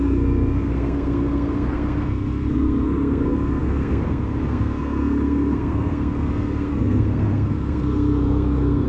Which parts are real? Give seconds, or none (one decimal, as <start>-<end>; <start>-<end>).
none